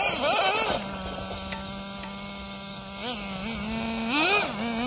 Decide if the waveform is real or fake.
real